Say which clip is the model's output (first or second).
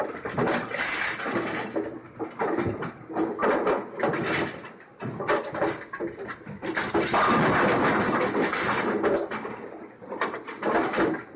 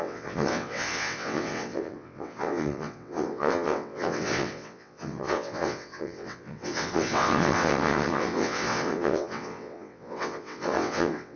second